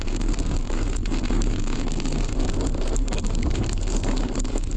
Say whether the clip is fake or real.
fake